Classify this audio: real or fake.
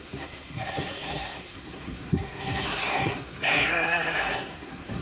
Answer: fake